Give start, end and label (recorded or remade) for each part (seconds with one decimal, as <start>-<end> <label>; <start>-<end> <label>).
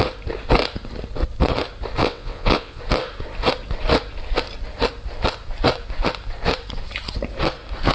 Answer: 0.0-2.0 recorded; 2.0-2.8 remade; 2.8-7.9 recorded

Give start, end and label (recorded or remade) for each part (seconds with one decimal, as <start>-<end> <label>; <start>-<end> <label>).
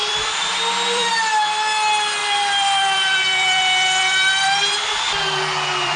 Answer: 0.0-1.1 remade; 1.1-2.2 recorded; 2.2-6.0 remade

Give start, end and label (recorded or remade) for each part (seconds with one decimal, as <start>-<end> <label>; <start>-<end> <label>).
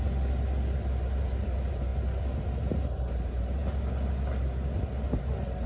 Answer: 0.0-5.7 recorded